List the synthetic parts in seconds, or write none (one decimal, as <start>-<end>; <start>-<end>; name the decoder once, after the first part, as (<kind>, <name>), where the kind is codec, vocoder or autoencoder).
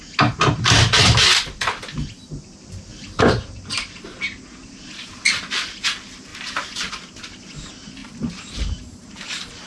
2.9-5.3 (vocoder, BigVGAN v2); 6.3-6.9; 8.0-9.7